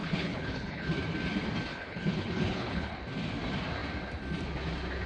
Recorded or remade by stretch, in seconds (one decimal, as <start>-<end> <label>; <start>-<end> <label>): 0.0-0.9 remade; 0.9-1.7 recorded; 1.7-3.0 remade; 3.0-5.1 recorded